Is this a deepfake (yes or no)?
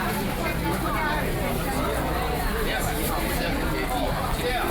no